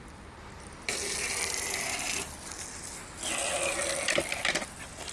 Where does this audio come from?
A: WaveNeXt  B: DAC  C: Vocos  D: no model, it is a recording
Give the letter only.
D